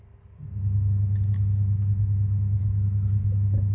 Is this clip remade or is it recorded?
recorded